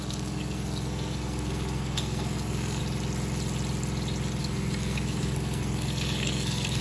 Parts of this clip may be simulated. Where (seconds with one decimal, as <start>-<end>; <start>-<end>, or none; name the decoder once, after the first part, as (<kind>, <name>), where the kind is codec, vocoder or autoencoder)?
0.0-2.8 (codec, SNAC); 4.4-6.8